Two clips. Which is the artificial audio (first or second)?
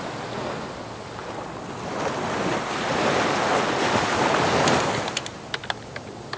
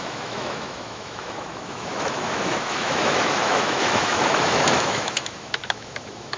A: second